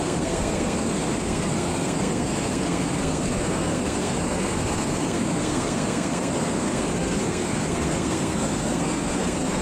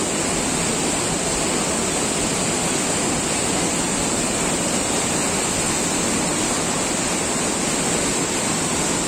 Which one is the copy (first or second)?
first